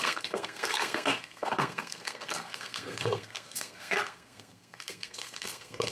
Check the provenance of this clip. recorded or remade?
remade